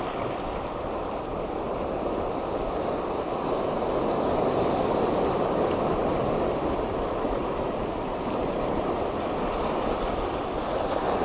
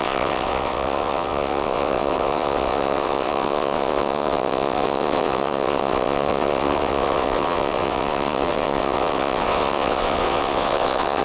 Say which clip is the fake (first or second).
second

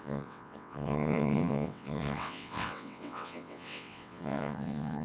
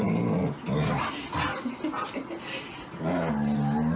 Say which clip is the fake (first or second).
first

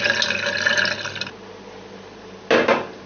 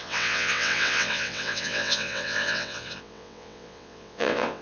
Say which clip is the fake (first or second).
second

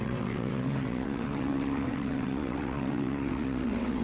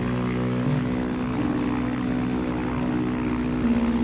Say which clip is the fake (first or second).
first